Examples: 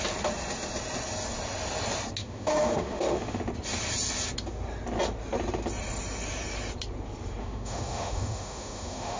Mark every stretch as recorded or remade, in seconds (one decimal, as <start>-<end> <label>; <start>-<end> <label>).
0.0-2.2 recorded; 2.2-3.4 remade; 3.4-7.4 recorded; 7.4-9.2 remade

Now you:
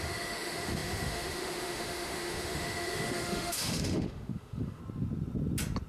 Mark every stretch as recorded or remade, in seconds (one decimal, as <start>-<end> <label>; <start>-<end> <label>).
0.0-4.8 remade; 4.8-5.9 recorded

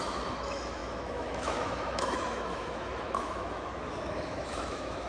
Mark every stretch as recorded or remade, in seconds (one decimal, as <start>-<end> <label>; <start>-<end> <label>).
0.0-5.1 remade

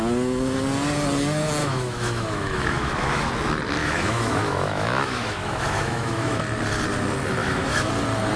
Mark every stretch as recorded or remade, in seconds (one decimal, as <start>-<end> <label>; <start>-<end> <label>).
0.0-1.6 recorded; 1.6-3.3 remade; 3.3-3.8 recorded; 3.8-6.4 remade; 6.4-7.4 recorded; 7.4-7.9 remade; 7.9-8.4 recorded

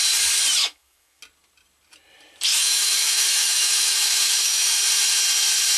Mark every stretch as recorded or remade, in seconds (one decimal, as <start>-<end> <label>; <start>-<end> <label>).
0.0-0.6 recorded; 0.6-1.2 remade; 1.2-2.5 recorded; 2.5-4.8 remade; 4.8-5.8 recorded